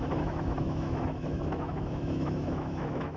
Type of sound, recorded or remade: remade